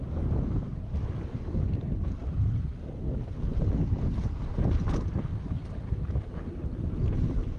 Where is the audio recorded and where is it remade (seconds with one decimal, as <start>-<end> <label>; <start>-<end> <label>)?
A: 0.0-2.2 remade; 2.2-3.7 recorded; 3.7-5.3 remade; 5.3-6.5 recorded; 6.5-7.6 remade